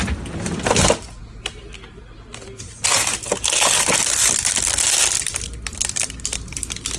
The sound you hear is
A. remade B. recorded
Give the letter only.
B